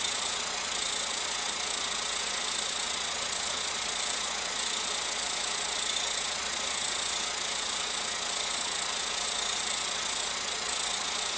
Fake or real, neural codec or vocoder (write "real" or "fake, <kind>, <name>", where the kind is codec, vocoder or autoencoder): fake, vocoder, Vocos